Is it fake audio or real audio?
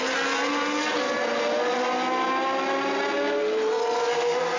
real